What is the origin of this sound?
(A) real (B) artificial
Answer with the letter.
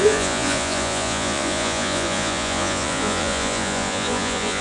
B